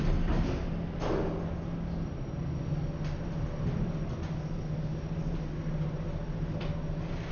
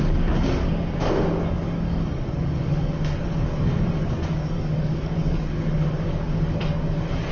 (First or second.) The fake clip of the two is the second